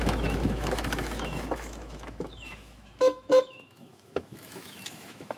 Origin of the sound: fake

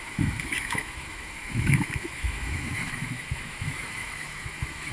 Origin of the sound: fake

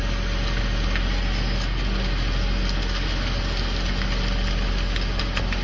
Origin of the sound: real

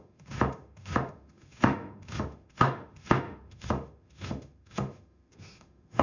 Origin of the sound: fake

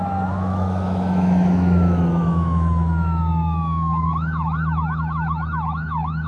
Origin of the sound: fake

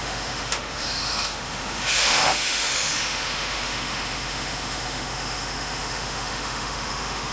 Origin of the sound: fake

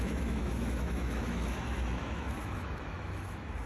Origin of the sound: fake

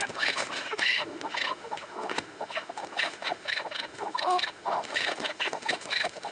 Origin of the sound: fake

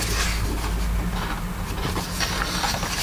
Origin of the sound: real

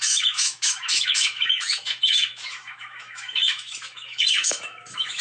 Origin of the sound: fake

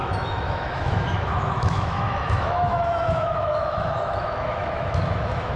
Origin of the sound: fake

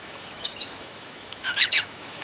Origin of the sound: fake